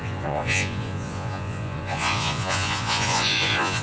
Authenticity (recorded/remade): remade